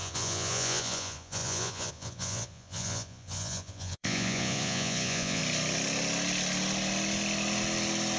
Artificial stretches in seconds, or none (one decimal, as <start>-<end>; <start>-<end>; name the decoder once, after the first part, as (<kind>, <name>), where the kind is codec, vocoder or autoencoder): 0.0-5.4 (vocoder, Vocos)